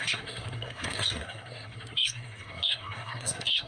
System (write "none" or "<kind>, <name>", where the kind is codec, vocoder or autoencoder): codec, SNAC